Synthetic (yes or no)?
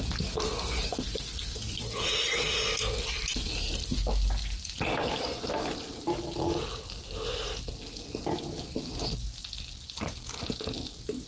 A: no